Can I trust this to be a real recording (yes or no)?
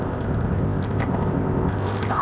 no